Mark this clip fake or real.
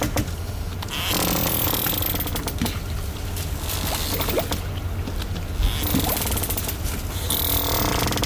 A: real